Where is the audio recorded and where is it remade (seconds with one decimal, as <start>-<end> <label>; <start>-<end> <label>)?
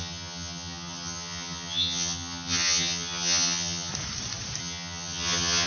0.0-3.9 remade; 3.9-4.6 recorded; 4.6-5.7 remade